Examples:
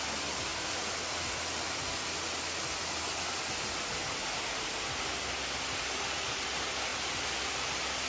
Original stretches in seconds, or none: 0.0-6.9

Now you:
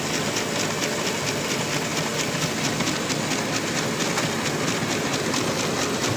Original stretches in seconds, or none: 0.0-6.2